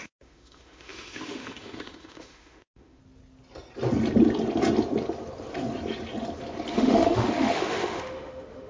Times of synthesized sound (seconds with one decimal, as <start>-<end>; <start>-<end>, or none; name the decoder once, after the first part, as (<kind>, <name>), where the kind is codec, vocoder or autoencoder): 0.0-3.0 (autoencoder, DAC-VAE); 6.7-8.7